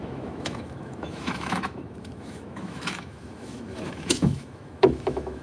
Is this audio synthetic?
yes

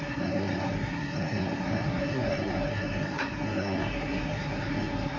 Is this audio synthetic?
yes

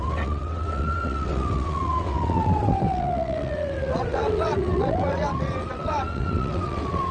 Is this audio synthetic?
yes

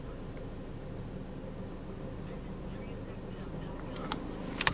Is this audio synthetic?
no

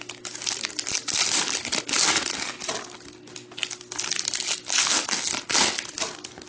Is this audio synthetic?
no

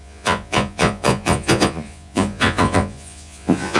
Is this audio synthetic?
yes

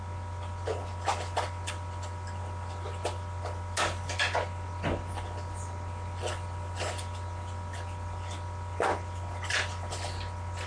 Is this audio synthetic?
no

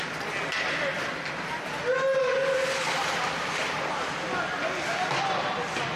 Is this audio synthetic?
no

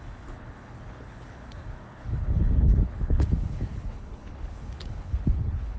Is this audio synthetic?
yes